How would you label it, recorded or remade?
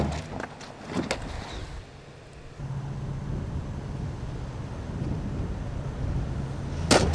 recorded